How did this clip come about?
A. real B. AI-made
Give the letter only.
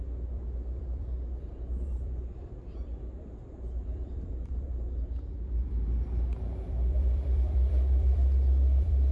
B